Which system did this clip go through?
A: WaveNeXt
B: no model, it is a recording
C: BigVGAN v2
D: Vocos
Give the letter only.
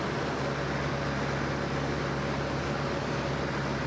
B